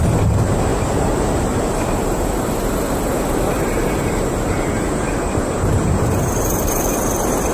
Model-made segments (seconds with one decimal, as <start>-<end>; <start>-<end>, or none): 0.0-7.5